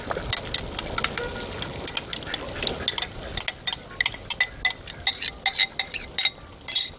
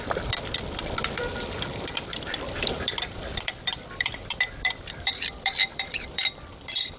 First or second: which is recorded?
first